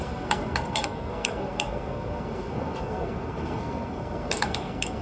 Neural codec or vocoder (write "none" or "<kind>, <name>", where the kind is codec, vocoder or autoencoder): codec, SNAC